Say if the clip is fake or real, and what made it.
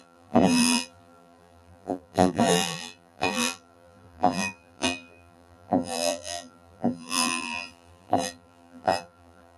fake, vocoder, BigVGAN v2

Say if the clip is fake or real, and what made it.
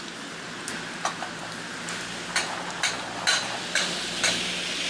real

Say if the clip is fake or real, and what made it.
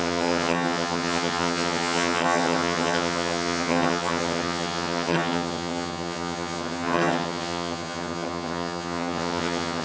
fake, vocoder, HiFi-GAN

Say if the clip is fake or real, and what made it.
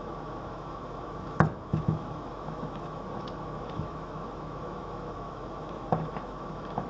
fake, autoencoder, DAC-VAE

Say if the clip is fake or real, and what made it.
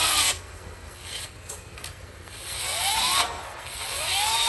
fake, codec, SNAC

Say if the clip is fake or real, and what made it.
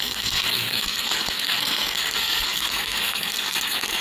fake, codec, SNAC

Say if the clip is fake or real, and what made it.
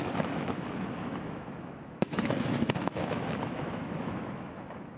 fake, autoencoder, DAC-VAE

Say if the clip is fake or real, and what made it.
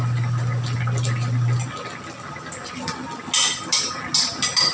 real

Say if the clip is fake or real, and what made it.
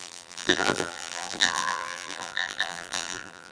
fake, vocoder, BigVGAN v2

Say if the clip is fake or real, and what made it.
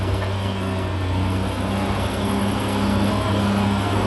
fake, codec, SNAC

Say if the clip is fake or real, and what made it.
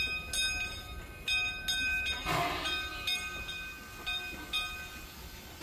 real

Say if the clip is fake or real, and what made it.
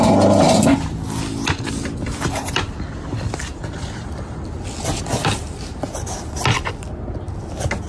real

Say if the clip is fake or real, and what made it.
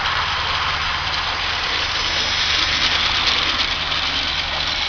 real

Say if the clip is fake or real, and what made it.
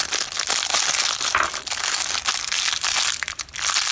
real